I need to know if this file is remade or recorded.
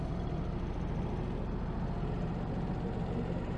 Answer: recorded